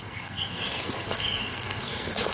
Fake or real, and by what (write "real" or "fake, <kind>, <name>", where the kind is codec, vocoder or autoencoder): fake, codec, SNAC